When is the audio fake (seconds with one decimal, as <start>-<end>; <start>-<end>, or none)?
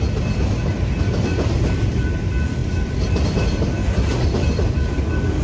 1.3-2.2; 2.6-3.3; 3.8-4.7